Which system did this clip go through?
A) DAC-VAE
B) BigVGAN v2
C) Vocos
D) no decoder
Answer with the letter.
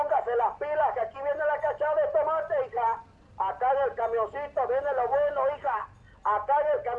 D